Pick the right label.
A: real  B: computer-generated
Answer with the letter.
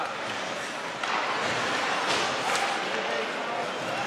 B